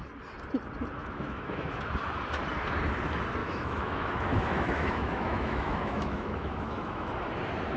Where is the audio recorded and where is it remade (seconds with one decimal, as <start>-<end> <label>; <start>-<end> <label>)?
0.0-1.0 recorded; 1.0-1.9 remade; 1.9-3.4 recorded; 3.4-7.1 remade; 7.1-7.8 recorded